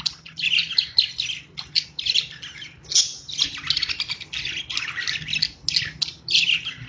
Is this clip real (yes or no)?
yes